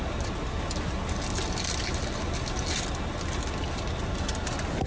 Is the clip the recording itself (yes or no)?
yes